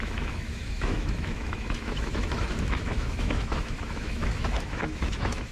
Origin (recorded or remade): remade